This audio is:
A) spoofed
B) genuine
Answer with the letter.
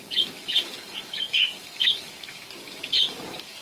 A